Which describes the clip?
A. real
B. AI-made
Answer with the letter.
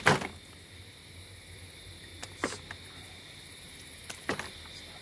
A